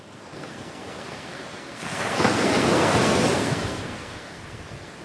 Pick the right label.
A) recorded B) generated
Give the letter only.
B